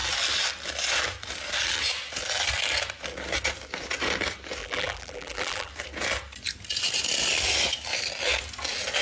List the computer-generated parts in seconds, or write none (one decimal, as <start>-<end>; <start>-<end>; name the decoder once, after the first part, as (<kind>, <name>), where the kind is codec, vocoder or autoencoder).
4.6-5.7 (vocoder, BigVGAN v2)